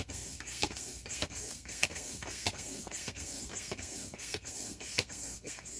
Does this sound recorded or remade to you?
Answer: remade